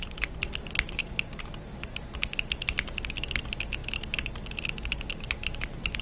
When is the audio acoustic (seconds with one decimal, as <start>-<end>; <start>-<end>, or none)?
0.0-6.0